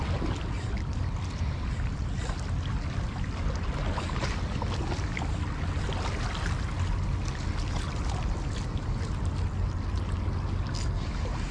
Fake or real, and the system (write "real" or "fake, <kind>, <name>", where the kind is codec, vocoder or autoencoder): real